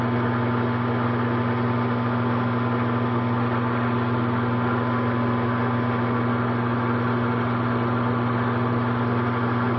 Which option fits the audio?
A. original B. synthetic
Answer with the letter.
A